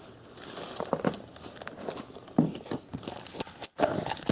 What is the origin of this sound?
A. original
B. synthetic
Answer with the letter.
A